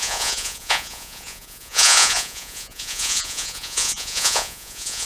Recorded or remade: remade